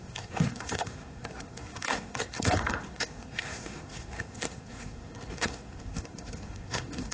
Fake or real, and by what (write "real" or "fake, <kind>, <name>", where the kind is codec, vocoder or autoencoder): fake, codec, SNAC